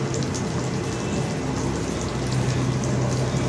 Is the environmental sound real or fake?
real